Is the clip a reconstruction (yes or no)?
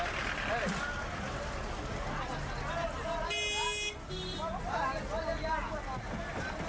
no